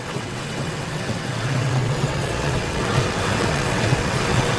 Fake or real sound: fake